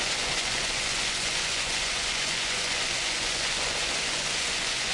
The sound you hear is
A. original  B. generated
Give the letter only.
B